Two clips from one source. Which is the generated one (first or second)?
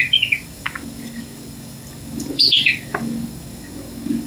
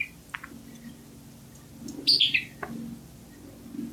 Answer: first